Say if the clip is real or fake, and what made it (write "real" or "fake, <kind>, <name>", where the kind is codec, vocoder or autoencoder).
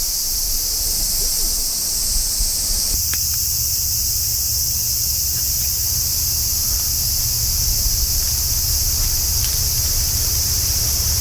fake, vocoder, BigVGAN v2